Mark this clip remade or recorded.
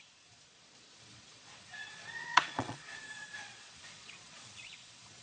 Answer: remade